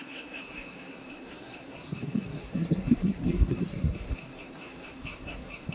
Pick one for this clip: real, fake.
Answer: fake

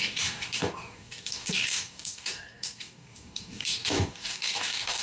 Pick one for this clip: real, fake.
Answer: fake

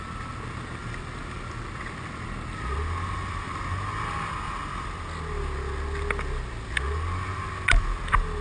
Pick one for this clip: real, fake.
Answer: real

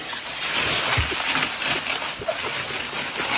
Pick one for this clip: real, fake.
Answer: real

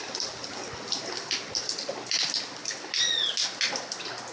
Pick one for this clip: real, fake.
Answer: real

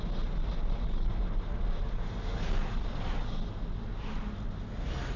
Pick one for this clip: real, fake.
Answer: real